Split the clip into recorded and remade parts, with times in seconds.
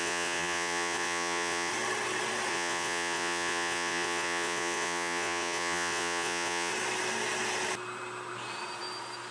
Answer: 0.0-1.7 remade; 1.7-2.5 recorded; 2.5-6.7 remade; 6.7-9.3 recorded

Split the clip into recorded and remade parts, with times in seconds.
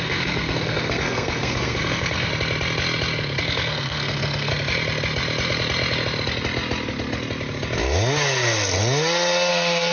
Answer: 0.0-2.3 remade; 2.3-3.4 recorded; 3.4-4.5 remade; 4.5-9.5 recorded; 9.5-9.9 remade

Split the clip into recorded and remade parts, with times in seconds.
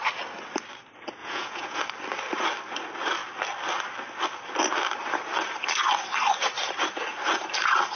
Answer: 0.0-1.2 recorded; 1.2-1.8 remade; 1.8-8.0 recorded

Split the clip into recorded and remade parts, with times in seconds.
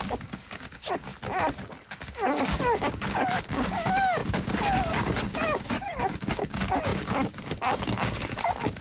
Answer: 0.0-1.1 remade; 1.1-1.9 recorded; 1.9-8.8 remade